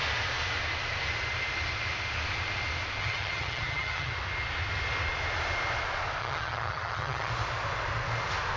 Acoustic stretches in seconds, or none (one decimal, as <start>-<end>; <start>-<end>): 0.0-3.0; 4.1-6.2; 7.3-8.6